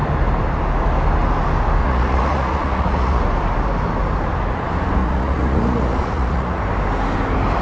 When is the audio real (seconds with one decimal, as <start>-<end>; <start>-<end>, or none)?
0.0-1.8; 3.2-5.0; 6.6-7.6